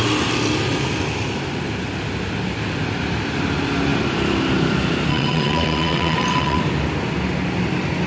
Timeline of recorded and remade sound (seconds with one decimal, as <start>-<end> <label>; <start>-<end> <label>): 0.0-5.1 recorded; 5.1-6.6 remade; 6.6-8.1 recorded